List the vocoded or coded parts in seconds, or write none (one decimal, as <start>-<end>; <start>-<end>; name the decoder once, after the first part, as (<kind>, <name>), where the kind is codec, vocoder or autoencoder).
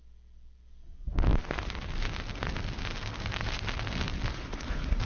4.3-5.0 (codec, SNAC)